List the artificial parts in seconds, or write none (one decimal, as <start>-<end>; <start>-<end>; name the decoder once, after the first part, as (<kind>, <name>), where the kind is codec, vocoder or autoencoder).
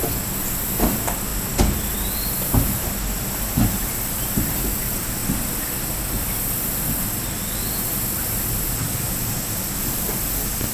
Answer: none